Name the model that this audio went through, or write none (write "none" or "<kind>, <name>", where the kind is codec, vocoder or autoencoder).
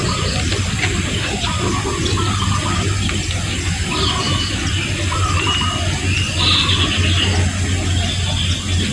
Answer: none